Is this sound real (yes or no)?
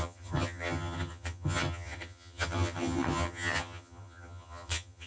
no